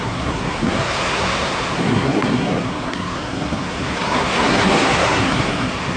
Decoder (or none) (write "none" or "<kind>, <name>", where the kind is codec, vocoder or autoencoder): codec, SNAC